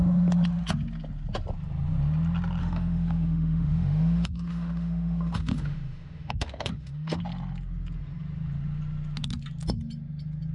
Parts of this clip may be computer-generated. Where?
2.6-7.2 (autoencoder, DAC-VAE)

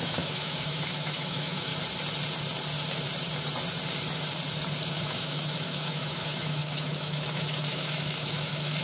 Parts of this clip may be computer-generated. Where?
0.0-1.7 (autoencoder, DAC-VAE); 4.9-8.8

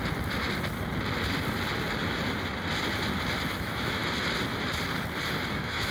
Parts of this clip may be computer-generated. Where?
3.5-4.0 (autoencoder, DAC-VAE); 5.5-5.9

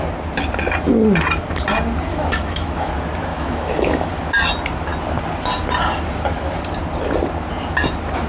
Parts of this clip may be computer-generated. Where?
2.1-2.9 (autoencoder, DAC-VAE); 3.3-4.1

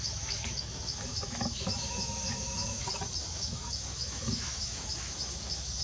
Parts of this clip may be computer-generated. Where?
0.0-2.8 (autoencoder, DAC-VAE); 3.3-5.8